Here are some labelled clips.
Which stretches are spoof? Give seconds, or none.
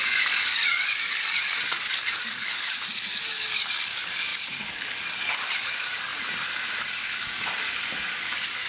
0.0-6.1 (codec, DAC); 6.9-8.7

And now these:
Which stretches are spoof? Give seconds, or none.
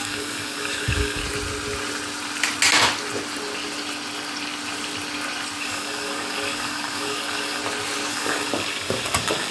0.0-1.2 (codec, DAC); 5.6-7.6; 8.1-9.5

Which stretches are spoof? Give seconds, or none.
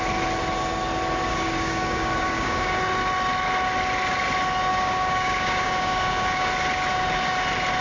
1.3-2.8 (codec, DAC); 4.7-6.5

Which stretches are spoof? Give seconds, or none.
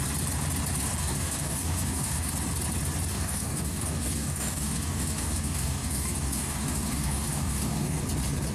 1.0-2.3 (codec, DAC); 3.1-8.0